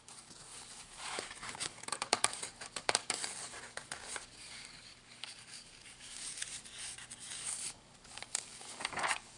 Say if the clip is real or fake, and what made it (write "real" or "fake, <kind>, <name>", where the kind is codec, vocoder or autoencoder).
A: fake, codec, DAC